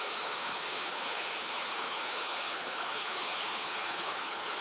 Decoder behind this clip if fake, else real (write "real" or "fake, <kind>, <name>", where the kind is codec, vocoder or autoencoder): fake, codec, HILCodec